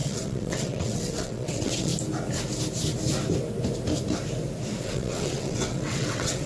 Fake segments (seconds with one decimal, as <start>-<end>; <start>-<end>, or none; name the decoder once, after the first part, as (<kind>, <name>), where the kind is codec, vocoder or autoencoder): 0.0-1.9 (vocoder, WaveNeXt); 4.8-6.5